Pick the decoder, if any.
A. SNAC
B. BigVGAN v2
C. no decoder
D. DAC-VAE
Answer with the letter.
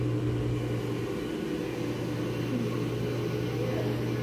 C